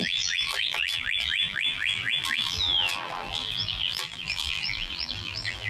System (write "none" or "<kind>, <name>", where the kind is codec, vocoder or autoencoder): vocoder, BigVGAN v2